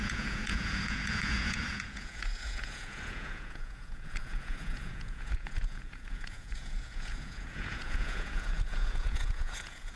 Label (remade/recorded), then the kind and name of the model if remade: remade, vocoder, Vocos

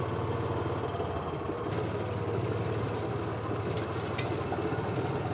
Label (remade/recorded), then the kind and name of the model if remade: recorded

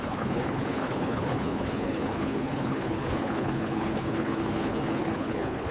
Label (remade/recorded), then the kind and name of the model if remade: remade, codec, HILCodec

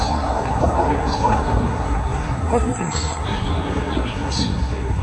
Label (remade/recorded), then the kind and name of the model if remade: remade, codec, SNAC